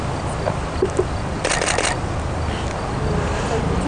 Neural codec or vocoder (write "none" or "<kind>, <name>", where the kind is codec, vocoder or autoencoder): none